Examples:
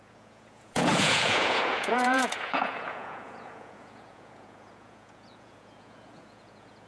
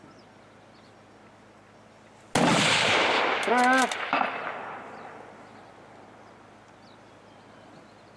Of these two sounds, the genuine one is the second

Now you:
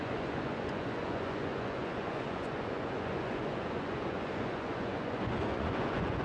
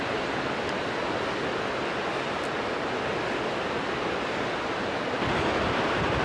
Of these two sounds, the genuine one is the second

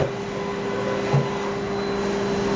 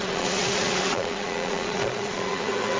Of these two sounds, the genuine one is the first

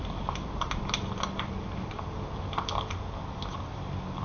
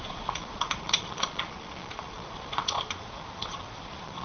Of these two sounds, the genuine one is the first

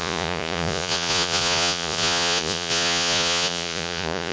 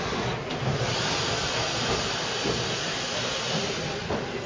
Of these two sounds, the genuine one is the second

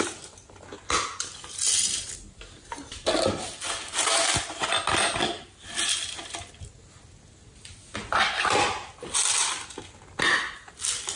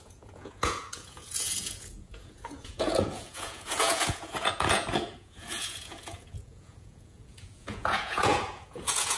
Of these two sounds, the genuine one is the first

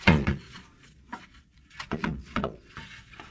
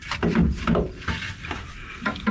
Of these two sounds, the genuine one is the second